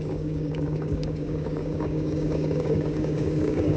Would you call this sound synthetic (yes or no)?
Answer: yes